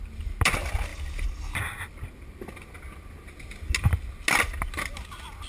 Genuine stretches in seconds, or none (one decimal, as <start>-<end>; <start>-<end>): 0.0-5.5